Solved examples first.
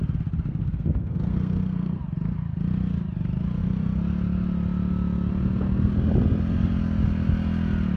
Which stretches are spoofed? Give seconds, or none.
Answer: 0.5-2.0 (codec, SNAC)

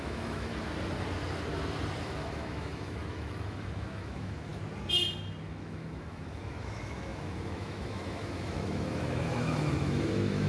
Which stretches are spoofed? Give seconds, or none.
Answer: 0.0-0.5 (autoencoder, DAC-VAE); 2.0-4.5; 5.4-10.5

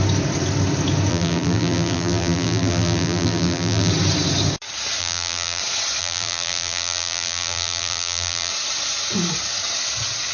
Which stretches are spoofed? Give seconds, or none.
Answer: 1.1-3.9 (vocoder, BigVGAN v2); 5.0-5.6; 6.0-8.5

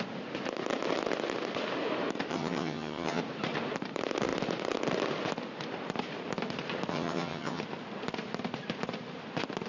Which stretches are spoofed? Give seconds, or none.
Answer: 2.3-3.2 (vocoder, HiFi-GAN); 6.9-7.6

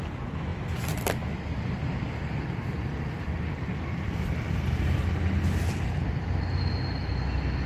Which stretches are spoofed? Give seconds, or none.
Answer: 0.5-5.1 (vocoder, BigVGAN v2)

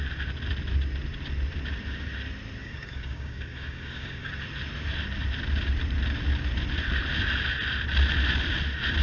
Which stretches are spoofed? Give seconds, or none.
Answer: 2.6-4.3 (codec, DAC)